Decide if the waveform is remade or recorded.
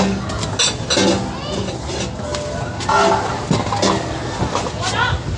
recorded